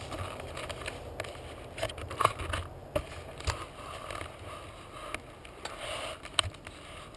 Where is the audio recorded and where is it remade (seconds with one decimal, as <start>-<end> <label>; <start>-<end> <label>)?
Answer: 0.0-7.2 recorded